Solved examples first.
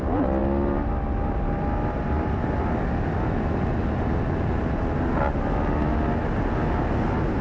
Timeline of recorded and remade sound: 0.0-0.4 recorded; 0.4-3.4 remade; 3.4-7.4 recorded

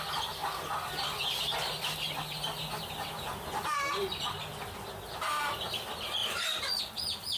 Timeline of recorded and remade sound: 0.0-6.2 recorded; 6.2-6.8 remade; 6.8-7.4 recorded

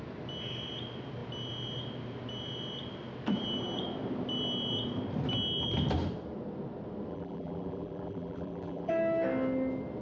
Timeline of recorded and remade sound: 0.0-7.1 recorded; 7.1-8.9 remade; 8.9-10.0 recorded

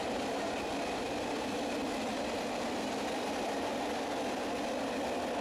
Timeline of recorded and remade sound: 0.0-5.4 recorded

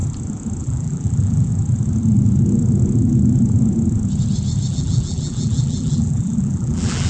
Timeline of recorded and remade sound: 0.0-0.6 recorded; 0.6-1.5 remade; 1.5-4.7 recorded; 4.7-7.1 remade